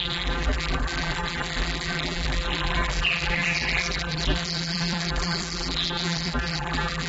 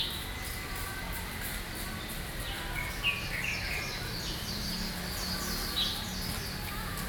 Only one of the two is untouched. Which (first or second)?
second